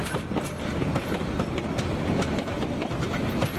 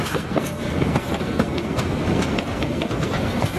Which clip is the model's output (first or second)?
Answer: second